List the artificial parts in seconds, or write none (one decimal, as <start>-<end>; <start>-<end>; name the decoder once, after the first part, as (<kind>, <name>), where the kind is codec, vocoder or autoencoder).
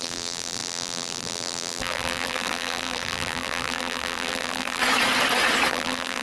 0.0-4.8 (vocoder, BigVGAN v2); 5.7-6.2